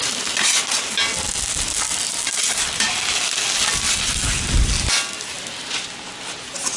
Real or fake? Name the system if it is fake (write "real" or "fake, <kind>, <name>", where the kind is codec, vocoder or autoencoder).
real